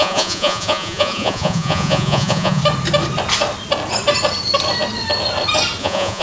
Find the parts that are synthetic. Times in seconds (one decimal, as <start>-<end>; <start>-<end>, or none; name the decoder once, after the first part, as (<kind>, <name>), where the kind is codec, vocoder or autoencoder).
0.0-2.6 (vocoder, Vocos); 5.8-6.2